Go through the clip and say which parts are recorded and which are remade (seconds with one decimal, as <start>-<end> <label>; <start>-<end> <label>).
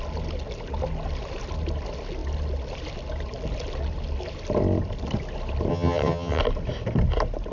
0.0-5.7 recorded; 5.7-6.4 remade; 6.4-7.5 recorded